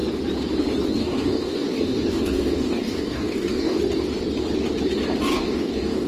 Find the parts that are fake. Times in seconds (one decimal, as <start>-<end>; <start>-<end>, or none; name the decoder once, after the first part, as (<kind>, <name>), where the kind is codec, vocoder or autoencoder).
1.0-3.8 (codec, DAC); 5.3-6.1